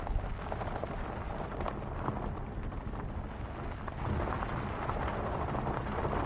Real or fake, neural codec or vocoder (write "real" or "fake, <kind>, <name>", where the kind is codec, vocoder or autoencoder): real